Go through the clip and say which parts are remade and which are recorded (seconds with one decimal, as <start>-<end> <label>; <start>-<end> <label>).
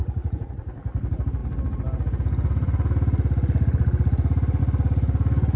0.0-0.7 remade; 0.7-5.6 recorded